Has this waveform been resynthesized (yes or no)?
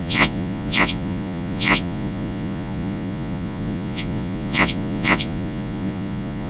yes